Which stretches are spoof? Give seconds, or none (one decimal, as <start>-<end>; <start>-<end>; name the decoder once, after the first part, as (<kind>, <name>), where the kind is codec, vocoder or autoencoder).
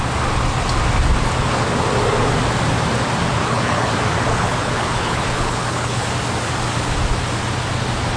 3.4-3.9 (codec, HILCodec); 4.3-6.1